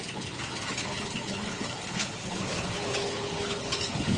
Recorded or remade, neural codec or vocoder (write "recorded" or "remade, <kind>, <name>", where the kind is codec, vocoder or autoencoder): remade, codec, HILCodec